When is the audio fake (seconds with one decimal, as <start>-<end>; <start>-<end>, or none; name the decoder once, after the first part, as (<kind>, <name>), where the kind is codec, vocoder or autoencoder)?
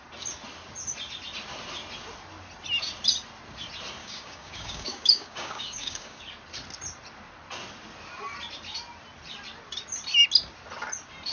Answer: 4.0-6.2 (codec, DAC)